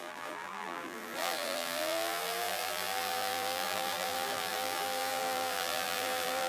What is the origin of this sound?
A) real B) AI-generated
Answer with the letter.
B